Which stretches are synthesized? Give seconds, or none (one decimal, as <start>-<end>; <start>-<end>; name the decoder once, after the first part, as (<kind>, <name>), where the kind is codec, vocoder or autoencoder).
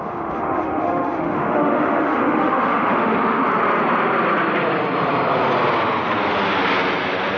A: 0.0-3.4 (autoencoder, DAC-VAE)